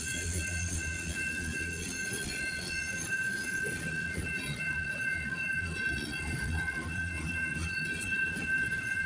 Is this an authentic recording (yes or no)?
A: no